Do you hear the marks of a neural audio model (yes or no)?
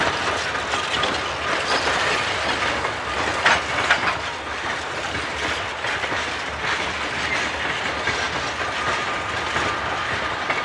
no